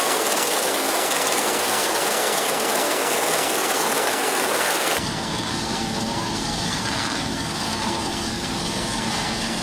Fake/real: fake